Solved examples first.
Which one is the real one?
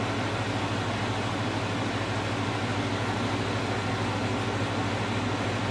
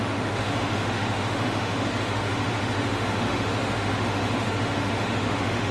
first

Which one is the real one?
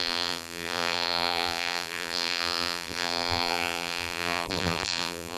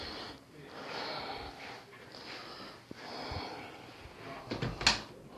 second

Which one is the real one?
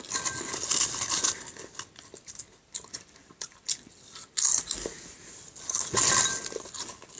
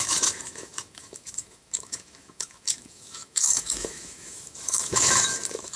first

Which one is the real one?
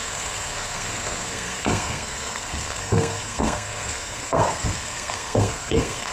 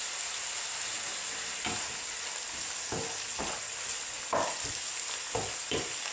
second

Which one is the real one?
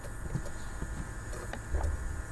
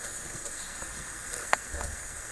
first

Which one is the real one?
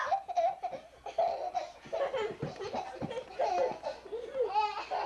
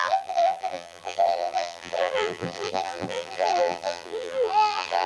first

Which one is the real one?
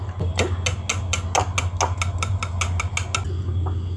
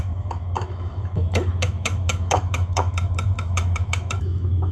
first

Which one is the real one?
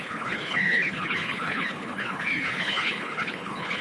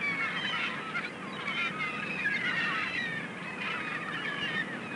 second